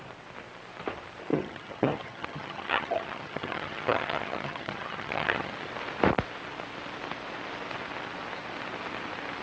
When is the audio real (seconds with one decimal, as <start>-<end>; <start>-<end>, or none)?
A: 0.0-1.3; 5.5-9.4